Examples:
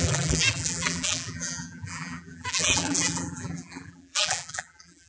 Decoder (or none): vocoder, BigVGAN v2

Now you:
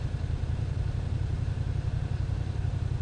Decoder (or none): vocoder, BigVGAN v2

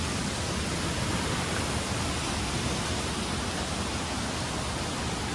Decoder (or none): none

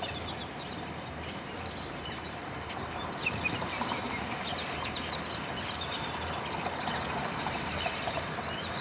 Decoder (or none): vocoder, BigVGAN v2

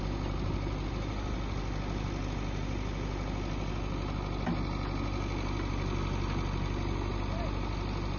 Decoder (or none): none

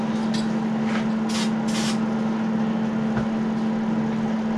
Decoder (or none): none